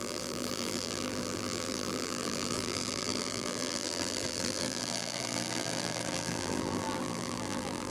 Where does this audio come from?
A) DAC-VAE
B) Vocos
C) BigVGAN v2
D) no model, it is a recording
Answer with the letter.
C